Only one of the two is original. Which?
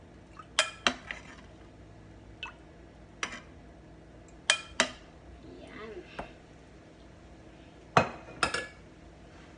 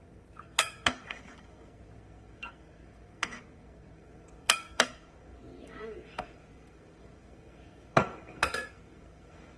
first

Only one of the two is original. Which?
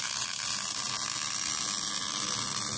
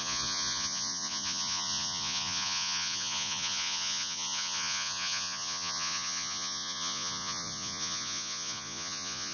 first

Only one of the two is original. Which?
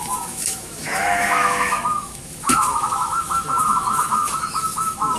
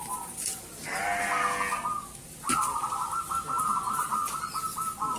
second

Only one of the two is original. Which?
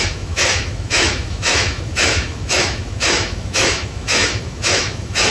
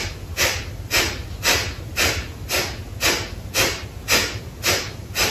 second